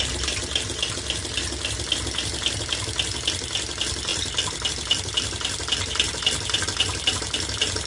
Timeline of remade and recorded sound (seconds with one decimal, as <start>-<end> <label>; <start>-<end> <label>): 0.0-7.9 recorded